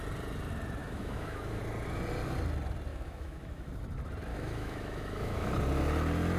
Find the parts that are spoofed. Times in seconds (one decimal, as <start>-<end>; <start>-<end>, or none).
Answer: 0.8-1.6; 2.9-3.7; 4.3-5.5